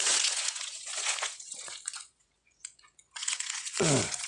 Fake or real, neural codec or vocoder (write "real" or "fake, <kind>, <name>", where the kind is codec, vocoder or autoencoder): fake, vocoder, Vocos